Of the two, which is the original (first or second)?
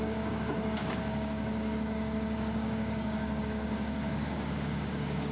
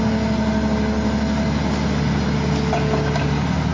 second